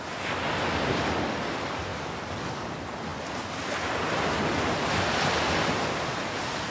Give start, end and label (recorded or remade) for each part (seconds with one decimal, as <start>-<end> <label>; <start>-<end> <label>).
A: 0.0-6.7 recorded